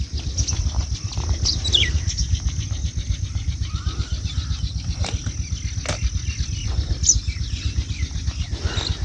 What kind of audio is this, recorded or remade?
recorded